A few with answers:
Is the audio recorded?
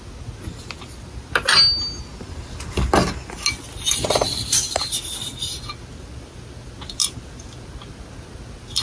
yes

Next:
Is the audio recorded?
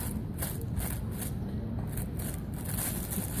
yes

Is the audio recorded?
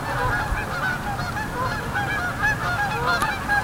yes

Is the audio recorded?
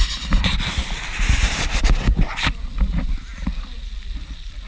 yes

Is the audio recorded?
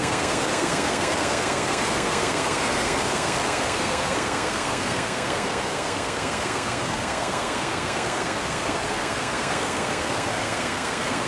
no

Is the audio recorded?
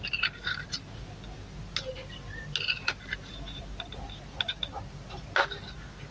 yes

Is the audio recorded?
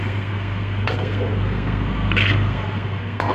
no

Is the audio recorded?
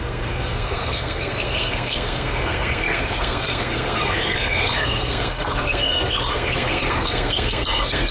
no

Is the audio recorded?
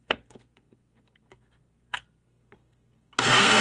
no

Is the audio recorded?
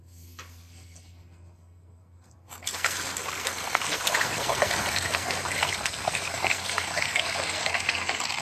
no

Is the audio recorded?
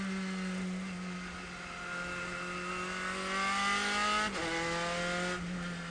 yes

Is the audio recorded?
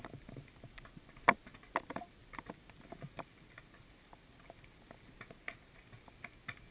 yes